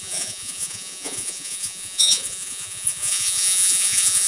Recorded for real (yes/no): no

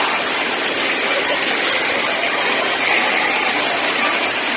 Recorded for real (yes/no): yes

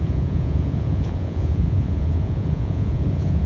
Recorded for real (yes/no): no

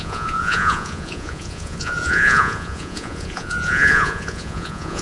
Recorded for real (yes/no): no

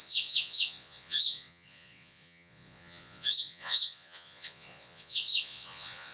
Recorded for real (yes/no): no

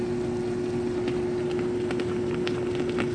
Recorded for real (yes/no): yes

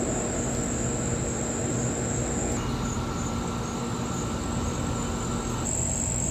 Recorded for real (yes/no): yes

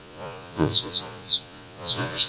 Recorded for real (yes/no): no